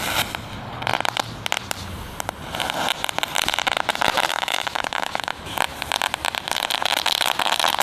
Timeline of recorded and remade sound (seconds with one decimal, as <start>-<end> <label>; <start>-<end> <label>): 0.0-4.3 recorded; 4.3-5.4 remade; 5.4-7.8 recorded